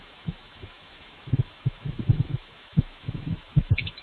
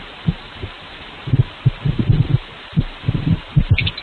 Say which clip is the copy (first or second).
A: first